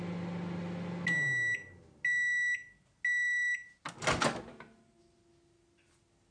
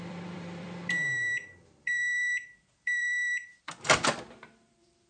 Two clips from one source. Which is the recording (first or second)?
first